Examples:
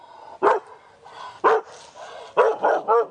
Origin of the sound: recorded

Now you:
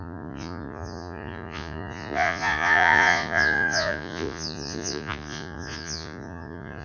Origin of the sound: remade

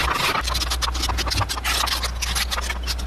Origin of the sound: recorded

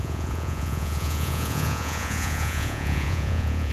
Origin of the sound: remade